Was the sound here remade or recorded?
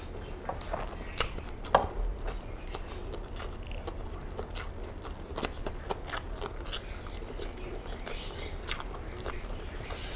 recorded